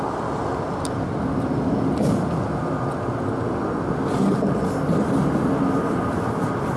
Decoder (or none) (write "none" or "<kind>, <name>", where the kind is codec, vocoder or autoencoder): none